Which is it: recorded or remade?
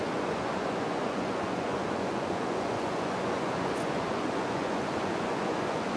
remade